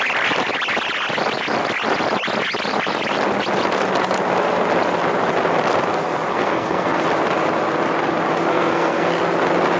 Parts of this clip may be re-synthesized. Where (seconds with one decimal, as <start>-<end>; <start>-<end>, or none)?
6.3-7.0; 8.5-9.1